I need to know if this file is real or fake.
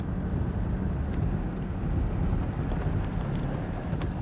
real